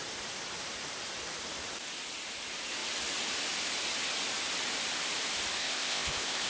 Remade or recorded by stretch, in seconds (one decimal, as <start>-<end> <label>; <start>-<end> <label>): 0.0-5.6 recorded; 5.6-6.5 remade

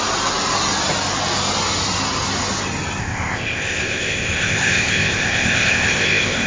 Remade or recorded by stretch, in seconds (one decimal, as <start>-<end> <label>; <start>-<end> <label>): 0.0-3.0 recorded; 3.0-6.5 remade

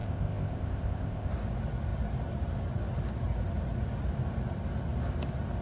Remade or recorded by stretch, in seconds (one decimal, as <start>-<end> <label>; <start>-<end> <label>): 0.0-1.3 remade; 1.3-5.6 recorded

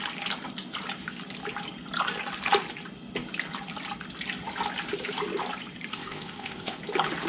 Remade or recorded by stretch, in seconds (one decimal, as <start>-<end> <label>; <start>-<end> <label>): 0.0-5.9 recorded; 5.9-6.8 remade; 6.8-7.3 recorded

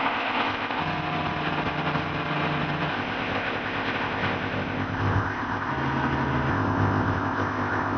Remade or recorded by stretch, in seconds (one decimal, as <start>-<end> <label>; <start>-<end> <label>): 0.0-0.8 remade; 0.8-2.9 recorded; 2.9-5.7 remade; 5.7-6.5 recorded; 6.5-8.0 remade

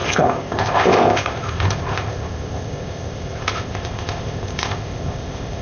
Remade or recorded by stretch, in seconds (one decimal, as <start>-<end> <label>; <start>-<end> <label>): 0.0-5.6 remade

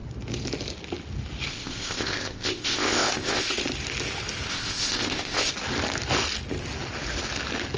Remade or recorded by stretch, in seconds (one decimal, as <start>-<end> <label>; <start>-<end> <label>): 0.0-1.5 recorded; 1.5-3.5 remade; 3.5-4.5 recorded; 4.5-5.5 remade; 5.5-7.8 recorded

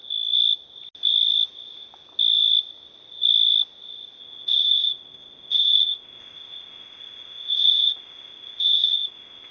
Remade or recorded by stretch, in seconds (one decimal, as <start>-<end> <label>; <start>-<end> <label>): 0.0-4.2 recorded; 4.2-9.5 remade